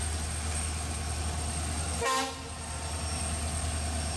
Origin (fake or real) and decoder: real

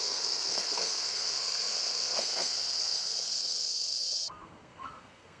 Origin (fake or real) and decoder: fake, codec, SNAC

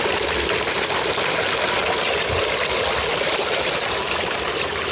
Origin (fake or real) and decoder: real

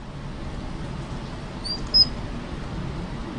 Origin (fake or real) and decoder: real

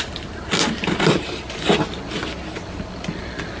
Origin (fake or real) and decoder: real